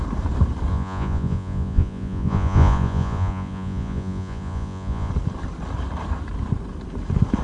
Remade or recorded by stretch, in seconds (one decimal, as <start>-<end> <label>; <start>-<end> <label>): 0.0-0.7 recorded; 0.7-5.1 remade; 5.1-7.4 recorded